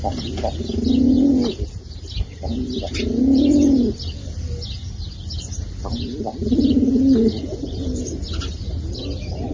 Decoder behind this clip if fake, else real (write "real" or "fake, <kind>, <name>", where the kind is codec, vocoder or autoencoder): real